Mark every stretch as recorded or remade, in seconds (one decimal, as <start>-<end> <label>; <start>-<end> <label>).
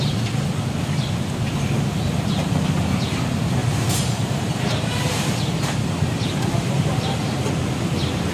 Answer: 0.0-3.6 recorded; 3.6-7.5 remade; 7.5-8.3 recorded